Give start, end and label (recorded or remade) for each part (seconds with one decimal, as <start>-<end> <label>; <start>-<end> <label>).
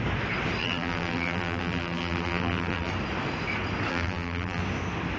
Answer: 0.0-0.6 recorded; 0.6-2.9 remade; 2.9-3.9 recorded; 3.9-4.6 remade; 4.6-5.2 recorded